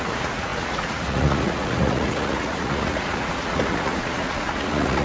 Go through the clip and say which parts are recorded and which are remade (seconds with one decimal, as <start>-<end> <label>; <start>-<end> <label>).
0.0-5.0 remade

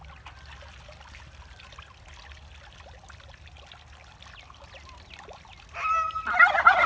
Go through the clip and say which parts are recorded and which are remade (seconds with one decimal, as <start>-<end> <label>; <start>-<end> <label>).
0.0-6.9 recorded

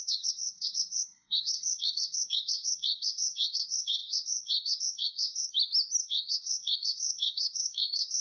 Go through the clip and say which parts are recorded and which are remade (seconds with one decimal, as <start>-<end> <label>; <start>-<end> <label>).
0.0-5.5 remade; 5.5-6.0 recorded; 6.0-8.2 remade

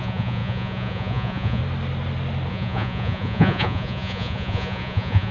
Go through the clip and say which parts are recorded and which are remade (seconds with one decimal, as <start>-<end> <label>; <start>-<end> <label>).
0.0-1.6 remade; 1.6-2.5 recorded; 2.5-5.3 remade

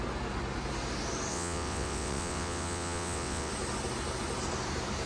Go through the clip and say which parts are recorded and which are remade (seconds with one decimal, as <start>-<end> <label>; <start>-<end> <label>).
0.0-1.3 recorded; 1.3-3.5 remade; 3.5-5.1 recorded

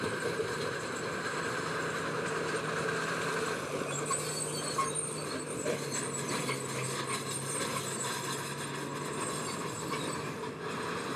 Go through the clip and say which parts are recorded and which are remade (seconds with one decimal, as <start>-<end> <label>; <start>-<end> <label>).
0.0-11.2 recorded

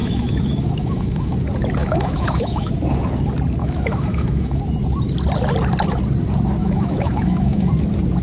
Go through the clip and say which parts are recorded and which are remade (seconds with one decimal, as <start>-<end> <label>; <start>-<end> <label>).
0.0-1.3 remade; 1.3-1.8 recorded; 1.8-2.7 remade; 2.7-3.6 recorded; 3.6-4.6 remade; 4.6-6.6 recorded; 6.6-7.7 remade; 7.7-8.2 recorded